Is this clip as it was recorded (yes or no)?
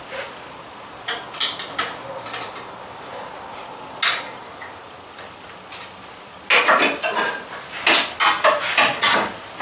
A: yes